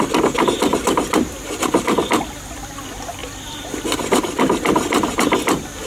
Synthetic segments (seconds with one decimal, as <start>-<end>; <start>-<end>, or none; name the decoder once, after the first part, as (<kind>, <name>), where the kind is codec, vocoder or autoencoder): 0.7-1.4 (vocoder, BigVGAN v2)